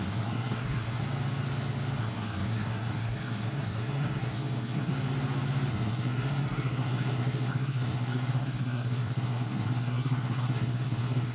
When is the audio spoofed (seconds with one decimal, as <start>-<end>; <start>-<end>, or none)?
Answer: 0.0-1.0; 2.0-4.9; 5.7-11.3